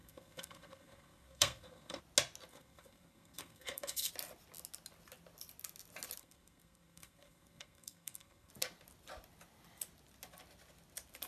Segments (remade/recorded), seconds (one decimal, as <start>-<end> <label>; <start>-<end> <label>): 0.0-2.0 remade; 2.0-2.5 recorded; 2.5-4.1 remade; 4.1-6.2 recorded; 6.2-8.5 remade; 8.5-11.3 recorded